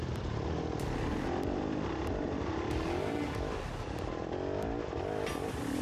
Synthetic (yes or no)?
no